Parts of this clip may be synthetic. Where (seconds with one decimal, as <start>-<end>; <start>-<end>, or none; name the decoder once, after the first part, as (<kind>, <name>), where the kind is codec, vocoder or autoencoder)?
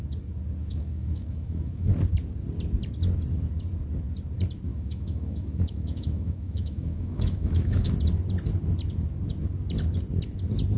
0.6-1.9 (autoencoder, DAC-VAE); 4.7-7.9